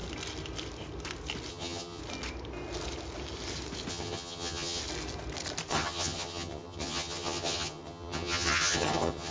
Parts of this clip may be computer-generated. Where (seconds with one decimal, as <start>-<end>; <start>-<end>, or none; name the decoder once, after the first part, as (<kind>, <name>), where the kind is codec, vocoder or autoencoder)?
1.5-2.0 (vocoder, HiFi-GAN); 3.9-4.8; 5.7-9.3